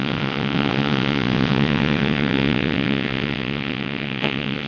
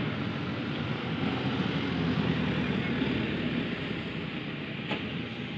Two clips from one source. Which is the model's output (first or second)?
first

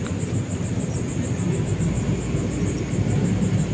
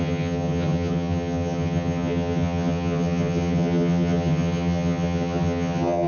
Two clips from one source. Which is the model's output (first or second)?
second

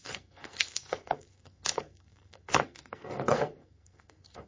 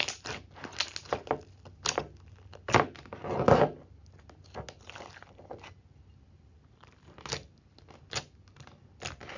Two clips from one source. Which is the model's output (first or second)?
first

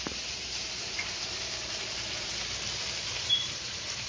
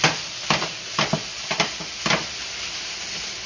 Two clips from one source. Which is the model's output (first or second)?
first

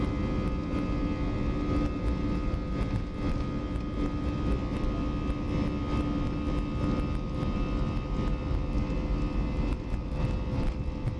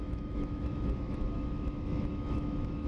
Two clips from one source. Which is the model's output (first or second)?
second